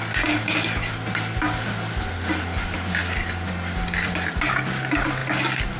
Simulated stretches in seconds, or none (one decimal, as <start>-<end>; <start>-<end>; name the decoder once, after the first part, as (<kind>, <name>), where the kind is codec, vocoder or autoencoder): none